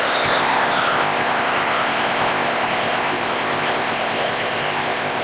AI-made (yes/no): yes